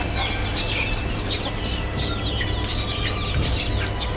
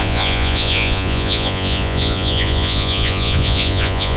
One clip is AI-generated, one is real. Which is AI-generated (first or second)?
second